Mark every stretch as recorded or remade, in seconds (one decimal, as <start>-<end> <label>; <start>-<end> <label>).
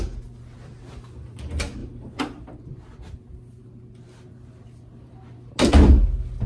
0.0-6.5 recorded